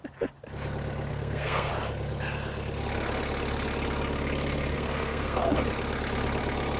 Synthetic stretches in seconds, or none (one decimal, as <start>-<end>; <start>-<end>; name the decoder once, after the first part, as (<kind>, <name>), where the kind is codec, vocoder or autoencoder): 1.1-1.7 (codec, SNAC); 4.7-5.6

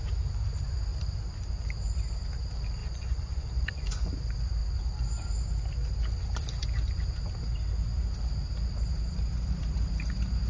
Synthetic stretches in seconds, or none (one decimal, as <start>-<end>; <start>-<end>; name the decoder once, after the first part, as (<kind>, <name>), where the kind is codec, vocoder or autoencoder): 2.8-4.1 (vocoder, Vocos)

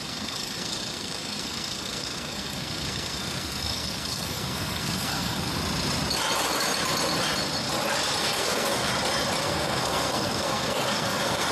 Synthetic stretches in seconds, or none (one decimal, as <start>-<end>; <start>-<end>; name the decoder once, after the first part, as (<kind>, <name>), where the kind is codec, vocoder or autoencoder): 0.0-5.5 (codec, SNAC); 8.2-8.9; 9.4-11.5

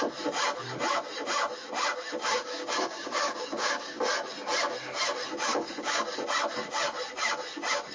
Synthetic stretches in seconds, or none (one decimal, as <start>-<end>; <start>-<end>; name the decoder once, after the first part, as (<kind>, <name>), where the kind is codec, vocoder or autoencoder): 2.2-4.0 (codec, DAC); 5.5-6.2

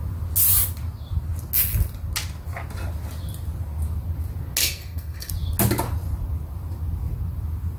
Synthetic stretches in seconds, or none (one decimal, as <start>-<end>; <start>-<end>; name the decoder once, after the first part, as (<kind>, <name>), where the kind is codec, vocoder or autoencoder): 4.6-5.3 (codec, SNAC)

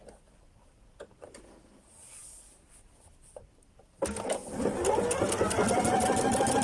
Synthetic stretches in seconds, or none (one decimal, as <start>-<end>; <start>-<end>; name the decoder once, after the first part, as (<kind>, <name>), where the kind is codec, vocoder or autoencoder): none

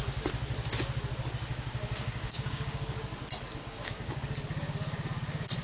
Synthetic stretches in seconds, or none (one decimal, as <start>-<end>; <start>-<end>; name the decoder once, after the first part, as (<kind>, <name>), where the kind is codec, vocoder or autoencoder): 1.5-3.0 (codec, DAC); 3.5-4.2

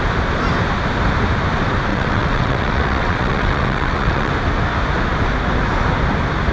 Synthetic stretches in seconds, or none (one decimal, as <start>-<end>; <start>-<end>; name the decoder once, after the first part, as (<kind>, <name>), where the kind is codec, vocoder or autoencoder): 1.9-4.3 (vocoder, WaveNeXt)